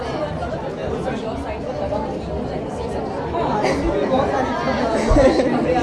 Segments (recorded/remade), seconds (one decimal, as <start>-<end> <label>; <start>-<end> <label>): 0.0-5.8 recorded